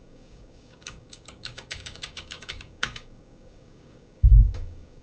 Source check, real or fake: fake